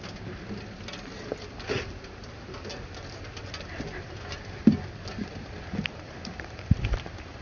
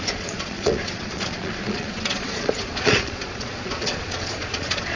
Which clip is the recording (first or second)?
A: first